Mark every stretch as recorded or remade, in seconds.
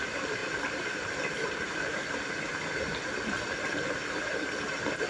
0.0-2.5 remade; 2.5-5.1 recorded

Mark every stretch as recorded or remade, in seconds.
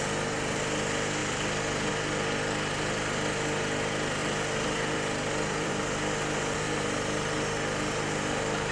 0.0-1.2 recorded; 1.2-1.9 remade; 1.9-4.2 recorded; 4.2-5.7 remade; 5.7-8.7 recorded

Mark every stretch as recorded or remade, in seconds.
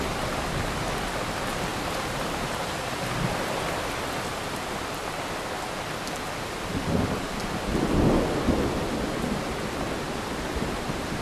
0.0-1.7 recorded; 1.7-2.7 remade; 2.7-11.2 recorded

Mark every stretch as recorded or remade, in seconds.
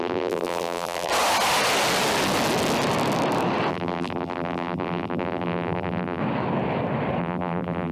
0.0-1.1 remade; 1.1-3.7 recorded; 3.7-6.2 remade; 6.2-7.2 recorded; 7.2-7.9 remade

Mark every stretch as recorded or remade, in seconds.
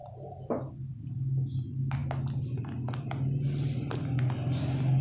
0.0-5.0 recorded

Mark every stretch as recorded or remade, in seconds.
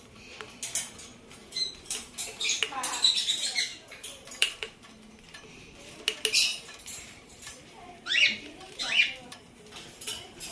0.0-1.4 recorded; 1.4-2.6 remade; 2.6-3.7 recorded; 3.7-5.4 remade; 5.4-6.5 recorded; 6.5-10.5 remade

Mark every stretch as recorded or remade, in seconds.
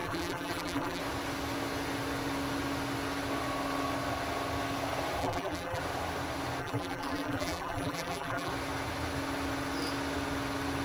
0.0-1.0 remade; 1.0-5.2 recorded; 5.2-5.8 remade; 5.8-6.6 recorded; 6.6-8.5 remade; 8.5-10.8 recorded